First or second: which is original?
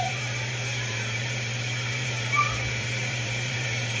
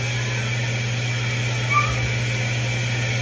second